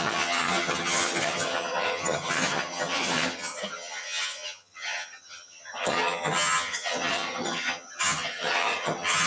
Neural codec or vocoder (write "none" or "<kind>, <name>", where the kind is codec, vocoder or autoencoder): vocoder, HiFi-GAN